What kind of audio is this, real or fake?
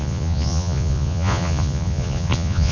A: fake